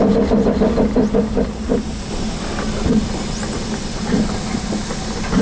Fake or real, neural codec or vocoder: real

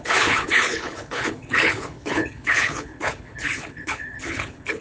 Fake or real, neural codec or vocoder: fake, codec, HILCodec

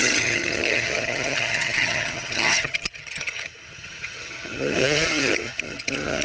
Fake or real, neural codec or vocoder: fake, vocoder, HiFi-GAN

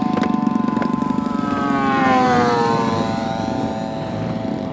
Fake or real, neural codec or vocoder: fake, vocoder, BigVGAN v2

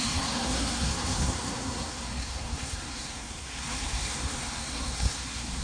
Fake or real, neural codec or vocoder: fake, codec, SNAC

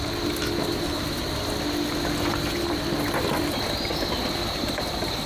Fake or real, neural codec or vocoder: real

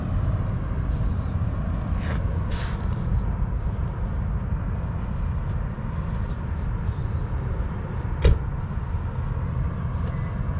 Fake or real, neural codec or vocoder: real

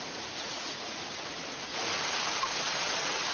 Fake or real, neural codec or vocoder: fake, vocoder, Vocos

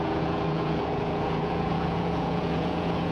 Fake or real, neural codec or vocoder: fake, vocoder, Vocos